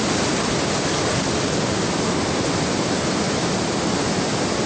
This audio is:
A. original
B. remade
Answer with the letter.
A